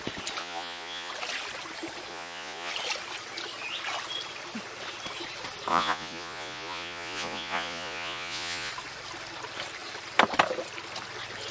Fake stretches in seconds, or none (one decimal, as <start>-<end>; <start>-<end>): 0.4-1.1; 2.1-2.7; 5.7-8.7